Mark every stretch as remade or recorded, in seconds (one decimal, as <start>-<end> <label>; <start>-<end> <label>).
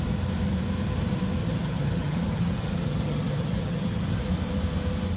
0.0-1.4 recorded; 1.4-4.2 remade; 4.2-5.2 recorded